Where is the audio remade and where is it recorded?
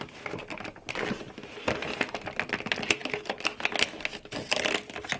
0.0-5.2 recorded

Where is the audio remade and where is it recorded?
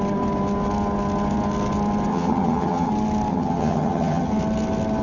0.0-2.1 recorded; 2.1-2.9 remade; 2.9-3.3 recorded; 3.3-4.3 remade; 4.3-5.0 recorded